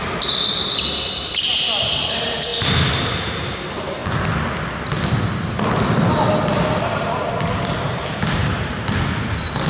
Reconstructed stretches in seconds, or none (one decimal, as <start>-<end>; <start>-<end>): 0.0-2.5; 3.5-4.0; 7.8-8.4